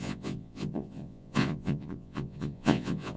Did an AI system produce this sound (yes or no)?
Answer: yes